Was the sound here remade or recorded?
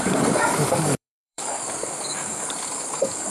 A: remade